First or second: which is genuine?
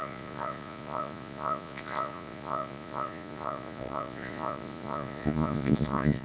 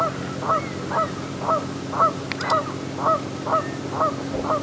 second